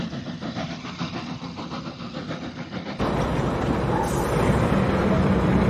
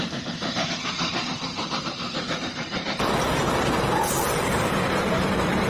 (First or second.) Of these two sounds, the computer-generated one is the second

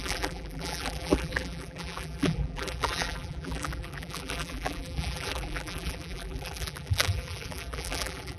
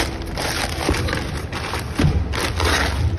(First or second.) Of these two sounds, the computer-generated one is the first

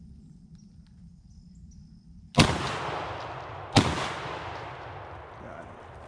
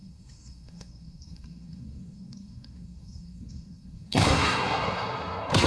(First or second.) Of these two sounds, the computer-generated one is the second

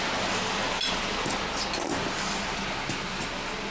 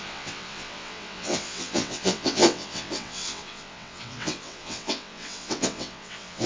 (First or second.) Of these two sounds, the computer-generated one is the second